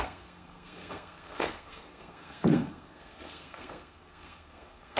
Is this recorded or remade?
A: remade